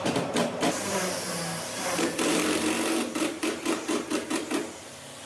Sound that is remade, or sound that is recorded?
remade